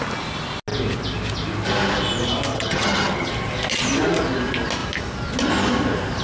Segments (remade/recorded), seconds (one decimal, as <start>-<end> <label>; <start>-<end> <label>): 0.0-2.5 recorded; 2.5-3.3 remade; 3.3-6.2 recorded